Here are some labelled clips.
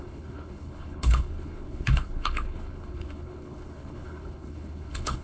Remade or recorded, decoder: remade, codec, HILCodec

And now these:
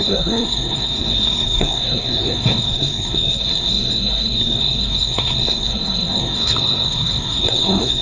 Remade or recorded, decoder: remade, codec, SNAC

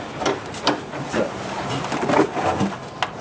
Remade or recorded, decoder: recorded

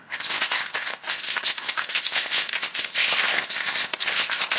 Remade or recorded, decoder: remade, codec, ZipCodec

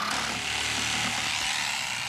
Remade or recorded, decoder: recorded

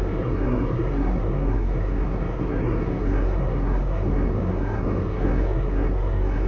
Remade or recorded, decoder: remade, codec, SNAC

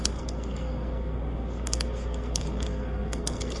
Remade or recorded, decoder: remade, codec, SNAC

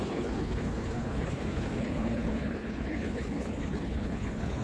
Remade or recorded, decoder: remade, codec, HILCodec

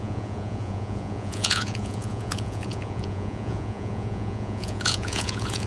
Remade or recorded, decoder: remade, vocoder, Vocos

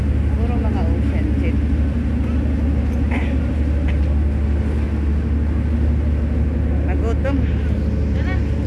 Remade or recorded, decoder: recorded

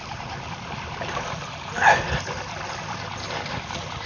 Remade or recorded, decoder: recorded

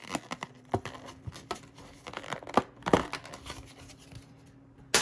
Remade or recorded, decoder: recorded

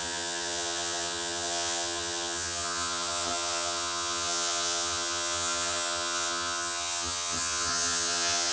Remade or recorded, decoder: remade, vocoder, HiFi-GAN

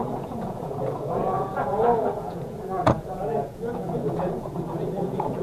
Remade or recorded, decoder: remade, vocoder, Vocos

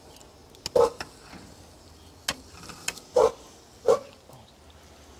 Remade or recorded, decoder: recorded